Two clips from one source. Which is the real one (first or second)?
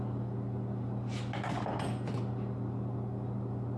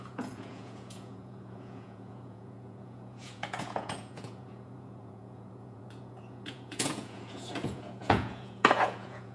first